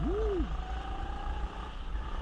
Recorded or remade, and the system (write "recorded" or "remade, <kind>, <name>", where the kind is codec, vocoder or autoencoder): recorded